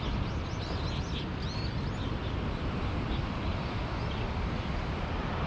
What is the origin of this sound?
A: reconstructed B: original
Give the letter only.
B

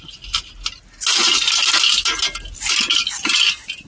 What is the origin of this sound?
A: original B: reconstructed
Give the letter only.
A